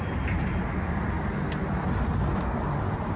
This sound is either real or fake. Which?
real